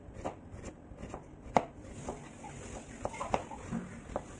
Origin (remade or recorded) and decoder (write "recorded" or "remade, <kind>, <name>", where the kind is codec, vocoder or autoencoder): recorded